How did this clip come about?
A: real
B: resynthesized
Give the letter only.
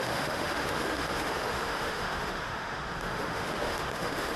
B